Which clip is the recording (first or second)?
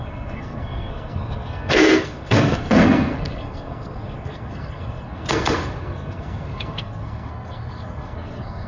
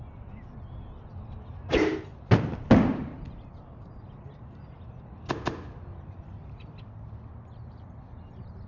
second